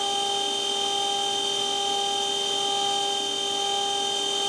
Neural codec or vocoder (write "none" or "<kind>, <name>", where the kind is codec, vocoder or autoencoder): none